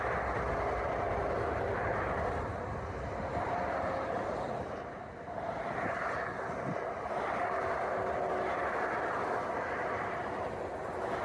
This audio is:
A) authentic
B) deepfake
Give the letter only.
A